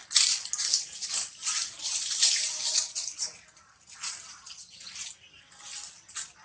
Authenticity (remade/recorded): recorded